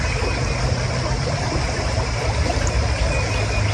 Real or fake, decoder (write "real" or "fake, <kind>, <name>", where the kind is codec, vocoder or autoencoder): real